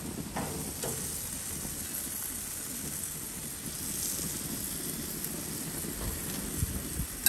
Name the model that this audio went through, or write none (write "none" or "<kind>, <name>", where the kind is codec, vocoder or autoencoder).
none